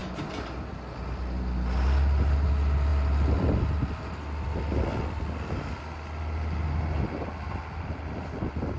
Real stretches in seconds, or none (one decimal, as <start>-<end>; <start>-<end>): 0.0-8.8